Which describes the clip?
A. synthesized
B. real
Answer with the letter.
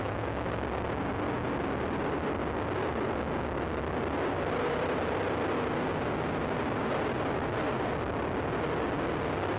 B